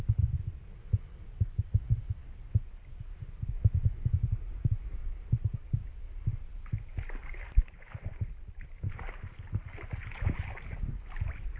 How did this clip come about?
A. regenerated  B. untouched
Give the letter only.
B